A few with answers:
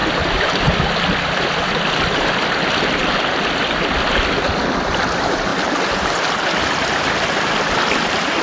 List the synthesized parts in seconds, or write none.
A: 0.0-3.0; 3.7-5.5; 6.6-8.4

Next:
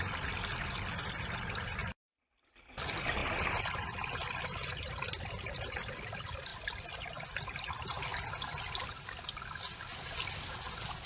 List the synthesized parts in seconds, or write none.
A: 1.8-2.5